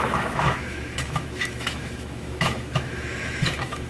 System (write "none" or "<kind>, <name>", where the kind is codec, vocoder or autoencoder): autoencoder, DAC-VAE